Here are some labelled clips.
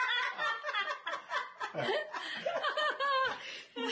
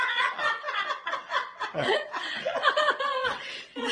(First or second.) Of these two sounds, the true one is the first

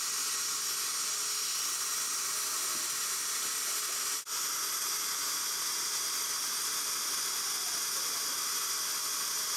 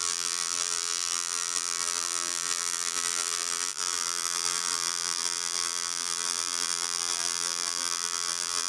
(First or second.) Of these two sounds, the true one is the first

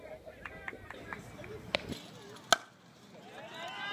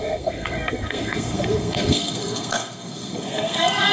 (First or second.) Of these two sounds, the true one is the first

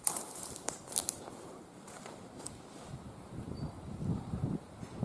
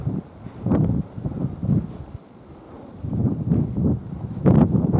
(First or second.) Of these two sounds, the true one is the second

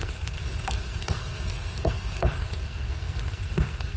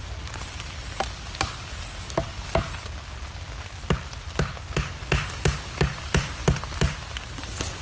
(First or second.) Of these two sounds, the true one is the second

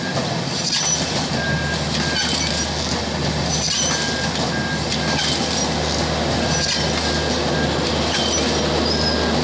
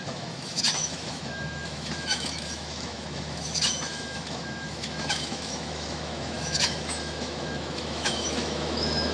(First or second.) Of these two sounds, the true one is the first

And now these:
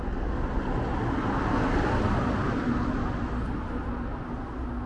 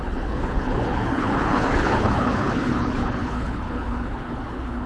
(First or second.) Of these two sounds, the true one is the first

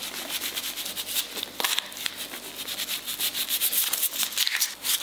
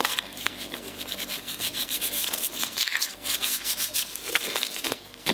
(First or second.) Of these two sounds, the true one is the first